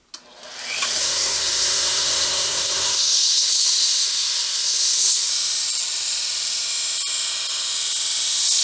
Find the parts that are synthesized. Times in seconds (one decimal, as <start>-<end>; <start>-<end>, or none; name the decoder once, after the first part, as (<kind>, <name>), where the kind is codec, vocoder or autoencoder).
1.0-5.3 (codec, SNAC)

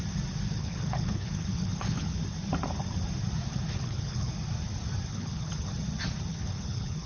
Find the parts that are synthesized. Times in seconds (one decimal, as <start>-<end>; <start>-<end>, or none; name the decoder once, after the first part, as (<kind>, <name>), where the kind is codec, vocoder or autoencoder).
0.6-2.2 (codec, HILCodec); 3.5-4.3; 5.1-5.7; 6.3-7.1

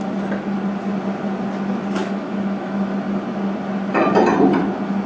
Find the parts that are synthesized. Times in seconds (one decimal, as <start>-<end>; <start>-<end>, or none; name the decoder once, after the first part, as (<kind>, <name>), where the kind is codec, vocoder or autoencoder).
2.0-2.9 (autoencoder, DAC-VAE)

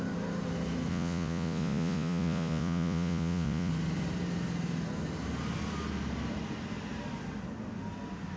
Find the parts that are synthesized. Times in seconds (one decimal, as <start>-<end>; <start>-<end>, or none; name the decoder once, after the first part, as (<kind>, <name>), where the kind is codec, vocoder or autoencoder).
0.9-3.7 (vocoder, Vocos)

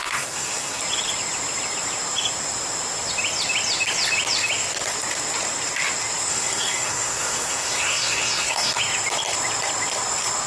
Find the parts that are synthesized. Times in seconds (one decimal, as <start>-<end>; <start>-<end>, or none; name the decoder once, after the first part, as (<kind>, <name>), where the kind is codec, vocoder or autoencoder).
0.0-0.8 (codec, SNAC); 6.3-8.8